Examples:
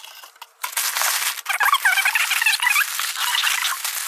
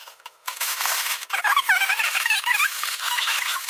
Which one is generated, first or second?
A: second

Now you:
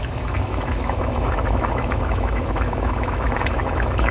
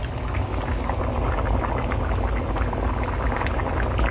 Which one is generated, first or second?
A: first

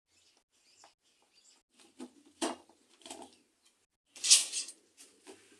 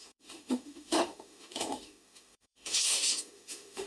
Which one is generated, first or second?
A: second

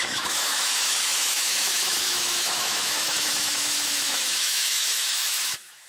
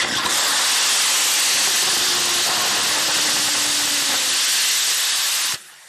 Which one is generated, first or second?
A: first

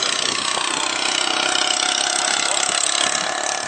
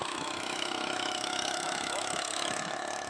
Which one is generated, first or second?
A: second